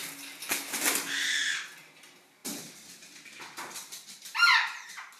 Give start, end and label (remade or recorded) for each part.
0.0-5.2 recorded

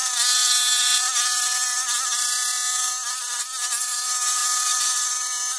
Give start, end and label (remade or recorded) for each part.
0.0-5.6 recorded